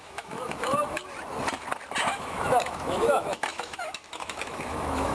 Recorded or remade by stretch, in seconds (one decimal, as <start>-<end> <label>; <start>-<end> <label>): 0.0-1.0 remade; 1.0-2.0 recorded; 2.0-5.1 remade